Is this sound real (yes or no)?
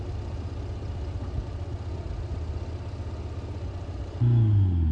yes